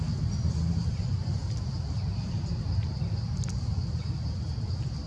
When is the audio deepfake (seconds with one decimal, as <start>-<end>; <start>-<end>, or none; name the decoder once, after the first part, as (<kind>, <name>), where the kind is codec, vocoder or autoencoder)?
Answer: 1.4-4.5 (vocoder, BigVGAN v2)